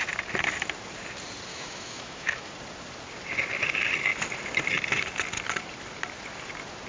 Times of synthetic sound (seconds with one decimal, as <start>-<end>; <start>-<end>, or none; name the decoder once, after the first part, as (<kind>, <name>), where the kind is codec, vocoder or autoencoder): 1.5-2.5 (autoencoder, DAC-VAE)